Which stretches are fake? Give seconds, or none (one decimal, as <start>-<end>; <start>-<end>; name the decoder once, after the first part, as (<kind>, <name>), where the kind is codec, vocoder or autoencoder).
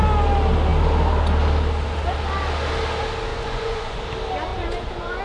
3.3-4.0 (vocoder, Vocos); 4.5-5.2